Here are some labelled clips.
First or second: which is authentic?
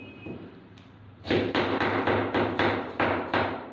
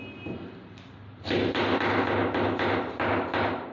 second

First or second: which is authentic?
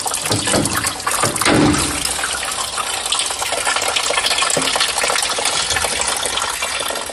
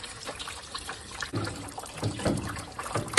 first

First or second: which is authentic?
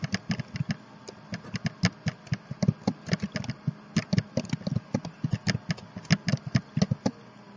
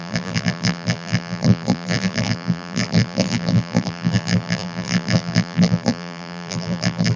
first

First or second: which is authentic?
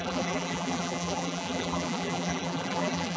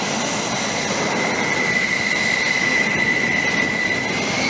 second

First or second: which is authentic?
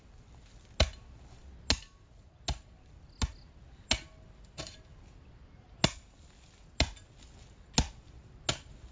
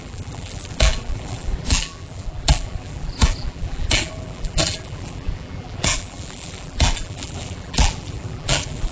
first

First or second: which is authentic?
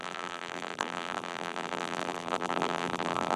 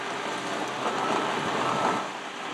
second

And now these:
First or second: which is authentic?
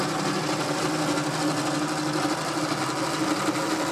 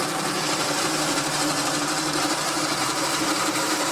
first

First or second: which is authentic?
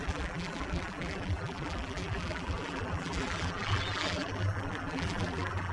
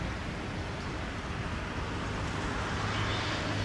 second